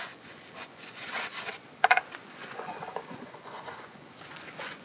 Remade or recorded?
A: remade